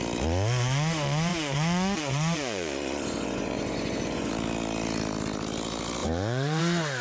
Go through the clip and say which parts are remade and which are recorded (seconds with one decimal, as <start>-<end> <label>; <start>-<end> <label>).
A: 0.0-1.3 recorded; 1.3-4.3 remade; 4.3-6.0 recorded; 6.0-6.6 remade; 6.6-7.0 recorded

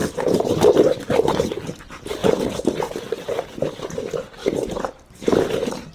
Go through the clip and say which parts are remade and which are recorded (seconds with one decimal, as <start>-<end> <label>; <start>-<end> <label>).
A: 0.0-5.9 recorded